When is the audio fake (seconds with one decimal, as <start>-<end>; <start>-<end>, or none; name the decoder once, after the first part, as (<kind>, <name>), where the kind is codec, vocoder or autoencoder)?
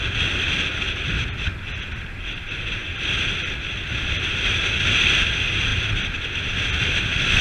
none